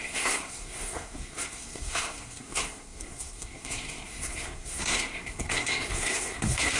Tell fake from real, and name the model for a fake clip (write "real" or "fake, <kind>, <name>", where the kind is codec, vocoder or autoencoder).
fake, codec, SNAC